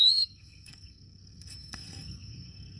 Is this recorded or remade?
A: remade